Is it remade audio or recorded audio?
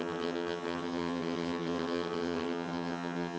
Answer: remade